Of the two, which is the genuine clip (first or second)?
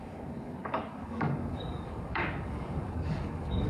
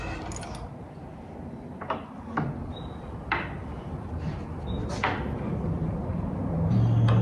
second